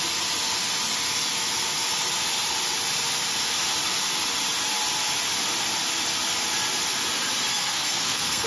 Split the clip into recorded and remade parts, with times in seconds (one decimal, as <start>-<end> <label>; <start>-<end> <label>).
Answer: 0.0-7.5 recorded; 7.5-8.5 remade